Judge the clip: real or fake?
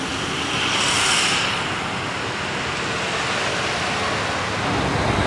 real